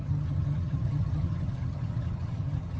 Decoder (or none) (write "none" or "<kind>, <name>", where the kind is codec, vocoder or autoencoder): vocoder, HiFi-GAN